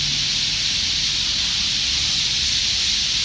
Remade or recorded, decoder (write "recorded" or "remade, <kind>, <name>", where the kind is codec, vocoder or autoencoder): recorded